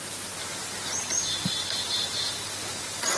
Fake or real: fake